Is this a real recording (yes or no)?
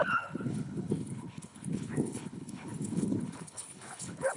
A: no